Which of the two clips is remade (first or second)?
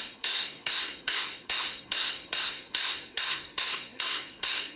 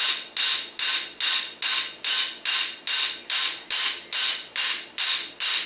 first